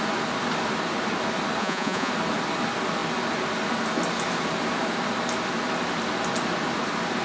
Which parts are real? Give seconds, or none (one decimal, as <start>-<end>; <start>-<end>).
0.0-1.6; 2.1-7.2